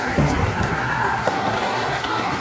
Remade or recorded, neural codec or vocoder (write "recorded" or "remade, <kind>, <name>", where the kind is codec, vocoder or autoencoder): remade, codec, SNAC